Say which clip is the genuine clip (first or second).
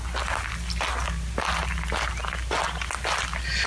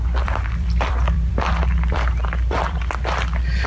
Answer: first